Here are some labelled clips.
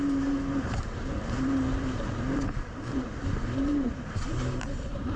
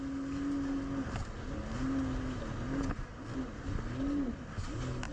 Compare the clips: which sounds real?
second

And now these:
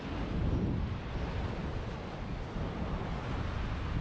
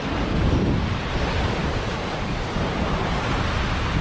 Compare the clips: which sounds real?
first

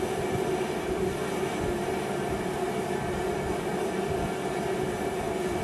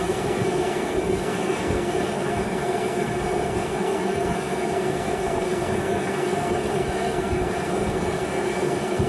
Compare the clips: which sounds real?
first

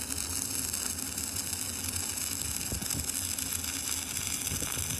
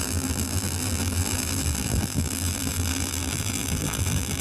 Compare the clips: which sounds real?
first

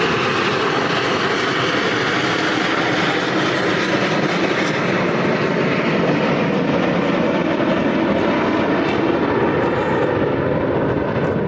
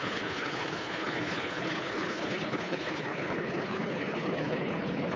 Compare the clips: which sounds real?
first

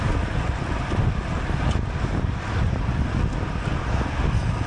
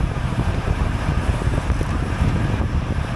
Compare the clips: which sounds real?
first